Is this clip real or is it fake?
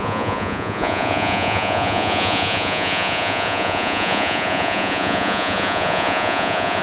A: fake